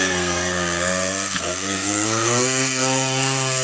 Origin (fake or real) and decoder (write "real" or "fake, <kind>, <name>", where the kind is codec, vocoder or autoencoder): fake, codec, SNAC